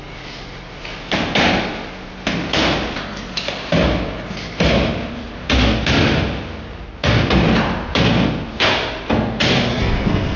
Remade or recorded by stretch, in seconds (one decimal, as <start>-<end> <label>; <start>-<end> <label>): 0.0-9.7 recorded; 9.7-10.4 remade